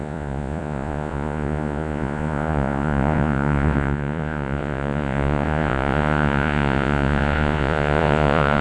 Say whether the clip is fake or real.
fake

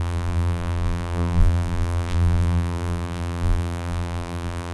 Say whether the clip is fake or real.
fake